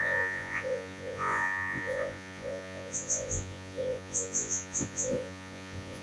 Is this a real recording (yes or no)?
no